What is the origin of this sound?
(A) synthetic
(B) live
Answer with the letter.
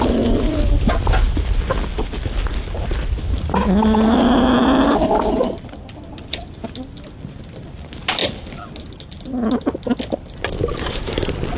B